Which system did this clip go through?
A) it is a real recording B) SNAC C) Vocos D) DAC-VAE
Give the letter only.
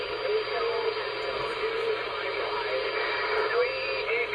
A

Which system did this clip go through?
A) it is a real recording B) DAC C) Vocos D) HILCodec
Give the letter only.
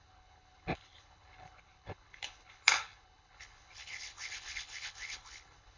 D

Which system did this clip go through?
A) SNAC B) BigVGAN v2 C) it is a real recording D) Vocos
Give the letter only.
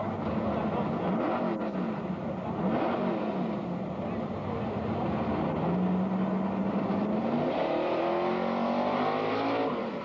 C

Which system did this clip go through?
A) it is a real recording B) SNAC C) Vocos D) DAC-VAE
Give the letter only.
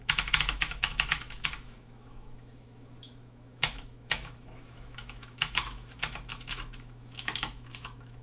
D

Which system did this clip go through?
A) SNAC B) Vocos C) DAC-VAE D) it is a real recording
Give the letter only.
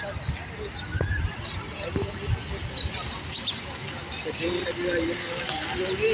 D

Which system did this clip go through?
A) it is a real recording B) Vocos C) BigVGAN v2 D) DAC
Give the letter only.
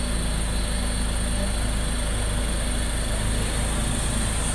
A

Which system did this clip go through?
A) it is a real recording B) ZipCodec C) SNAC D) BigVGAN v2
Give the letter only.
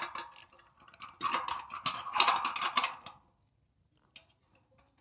A